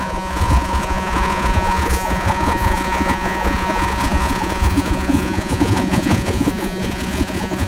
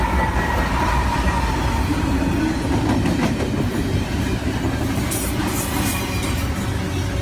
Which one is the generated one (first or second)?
first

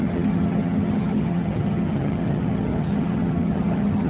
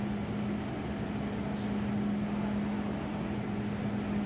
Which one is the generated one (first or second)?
first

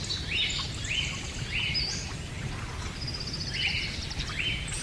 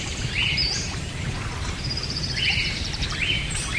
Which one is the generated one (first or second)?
second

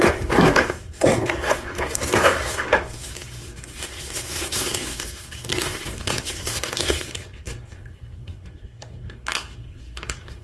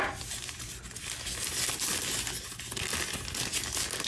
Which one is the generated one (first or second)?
first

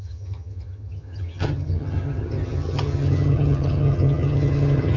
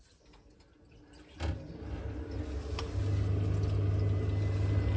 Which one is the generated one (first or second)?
first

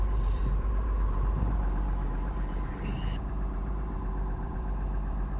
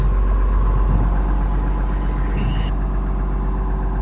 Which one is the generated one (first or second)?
first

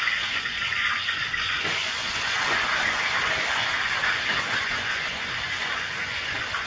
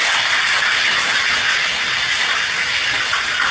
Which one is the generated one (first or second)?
first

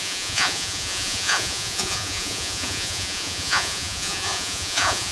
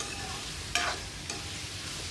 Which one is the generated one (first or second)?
first